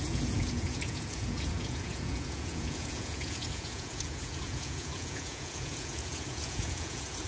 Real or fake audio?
fake